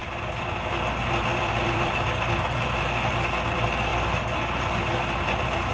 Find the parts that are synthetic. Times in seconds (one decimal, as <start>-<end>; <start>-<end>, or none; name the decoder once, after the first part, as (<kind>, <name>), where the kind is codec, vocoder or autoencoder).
0.0-0.7 (vocoder, BigVGAN v2); 1.3-2.0